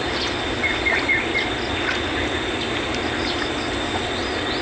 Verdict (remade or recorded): recorded